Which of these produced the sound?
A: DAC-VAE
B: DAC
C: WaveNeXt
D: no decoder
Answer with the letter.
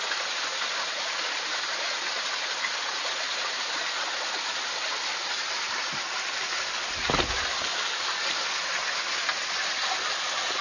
D